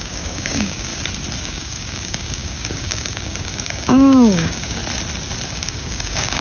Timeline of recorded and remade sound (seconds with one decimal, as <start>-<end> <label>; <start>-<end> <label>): 0.0-0.9 remade; 0.9-1.4 recorded; 1.4-4.8 remade; 4.8-5.5 recorded; 5.5-6.4 remade